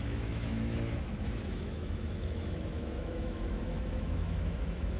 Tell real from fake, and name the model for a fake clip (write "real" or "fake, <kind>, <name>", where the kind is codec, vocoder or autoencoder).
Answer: fake, autoencoder, DAC-VAE